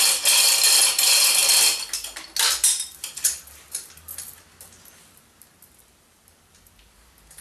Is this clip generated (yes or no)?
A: no